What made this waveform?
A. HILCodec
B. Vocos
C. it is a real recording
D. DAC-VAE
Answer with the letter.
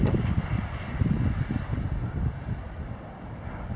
C